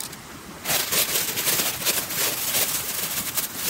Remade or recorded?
recorded